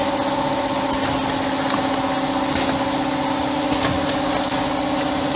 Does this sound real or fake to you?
real